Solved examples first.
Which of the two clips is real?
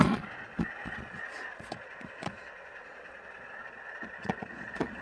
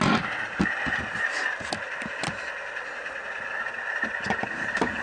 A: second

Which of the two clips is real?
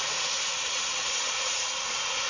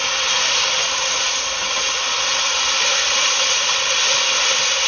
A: second